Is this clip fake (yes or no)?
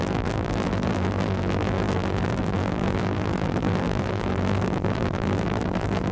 yes